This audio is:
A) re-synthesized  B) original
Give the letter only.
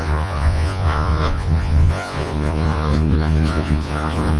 A